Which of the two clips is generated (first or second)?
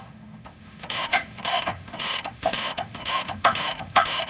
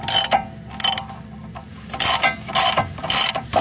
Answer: first